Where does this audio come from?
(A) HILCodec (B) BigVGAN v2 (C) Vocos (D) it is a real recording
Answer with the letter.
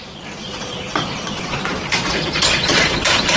C